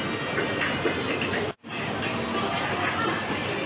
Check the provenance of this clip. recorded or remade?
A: recorded